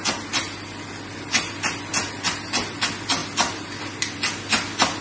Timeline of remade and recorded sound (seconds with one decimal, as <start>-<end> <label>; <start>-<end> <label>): 0.0-3.2 recorded; 3.2-4.0 remade; 4.0-5.0 recorded